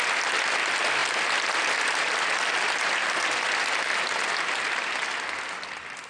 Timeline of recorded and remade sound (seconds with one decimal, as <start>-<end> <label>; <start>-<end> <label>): 0.0-6.1 recorded